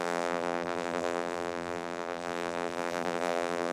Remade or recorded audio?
remade